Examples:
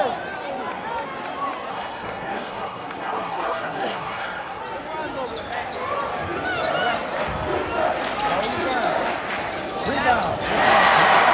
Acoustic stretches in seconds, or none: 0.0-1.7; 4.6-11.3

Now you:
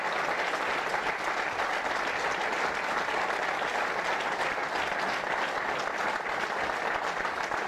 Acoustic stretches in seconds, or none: 0.0-7.7

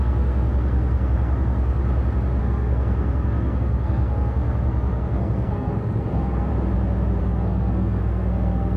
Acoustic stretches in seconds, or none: 1.8-2.4; 6.5-7.2

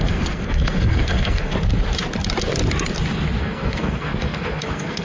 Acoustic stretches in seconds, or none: 1.5-3.4

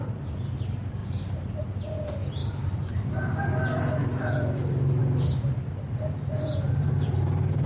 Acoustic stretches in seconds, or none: 0.0-1.0; 1.6-2.4; 3.4-7.7

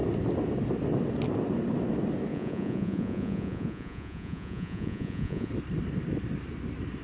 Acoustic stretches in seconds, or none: 0.0-2.3; 5.5-7.0

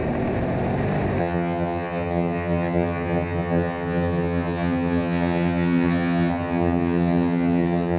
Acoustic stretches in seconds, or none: 0.0-1.2

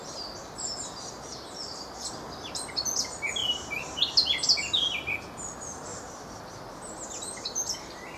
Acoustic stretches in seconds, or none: 0.0-1.3; 2.1-3.4; 4.0-5.9; 6.4-8.2